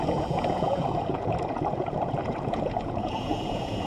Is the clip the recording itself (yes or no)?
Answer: no